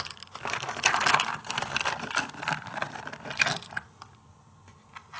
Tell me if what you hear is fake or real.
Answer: real